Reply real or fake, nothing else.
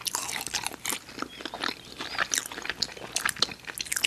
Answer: real